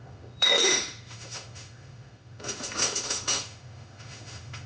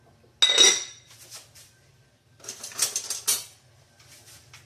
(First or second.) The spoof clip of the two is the first